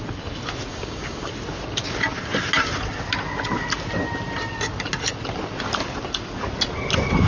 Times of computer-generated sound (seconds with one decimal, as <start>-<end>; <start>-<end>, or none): 0.7-1.3